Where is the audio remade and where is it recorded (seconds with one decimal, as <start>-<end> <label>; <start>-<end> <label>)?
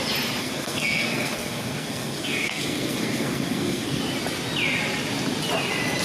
0.0-0.4 recorded; 0.4-4.0 remade; 4.0-6.0 recorded